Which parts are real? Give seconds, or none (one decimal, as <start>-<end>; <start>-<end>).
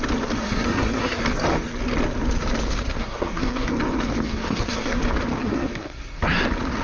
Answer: 0.0-0.4; 1.2-3.0; 3.7-4.3; 5.0-5.4; 6.2-6.8